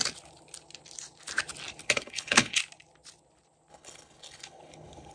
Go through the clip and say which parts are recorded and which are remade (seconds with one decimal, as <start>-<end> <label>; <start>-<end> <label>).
0.0-1.8 recorded; 1.8-2.6 remade; 2.6-3.7 recorded; 3.7-5.1 remade